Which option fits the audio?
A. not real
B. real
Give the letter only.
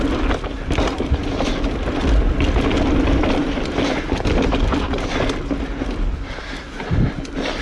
B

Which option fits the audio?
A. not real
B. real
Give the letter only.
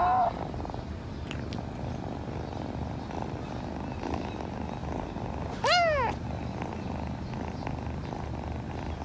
B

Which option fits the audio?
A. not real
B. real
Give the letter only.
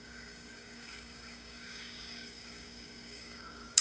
A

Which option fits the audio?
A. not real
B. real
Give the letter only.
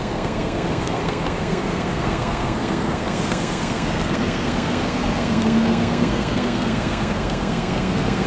A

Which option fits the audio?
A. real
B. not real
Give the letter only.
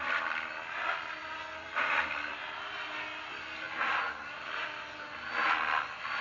A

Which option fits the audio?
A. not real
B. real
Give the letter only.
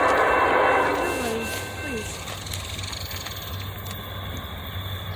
B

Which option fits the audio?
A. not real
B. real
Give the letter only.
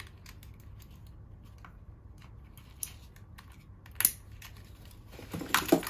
B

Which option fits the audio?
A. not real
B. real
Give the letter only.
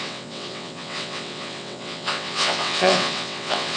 A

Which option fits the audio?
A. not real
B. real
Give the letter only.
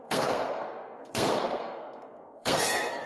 A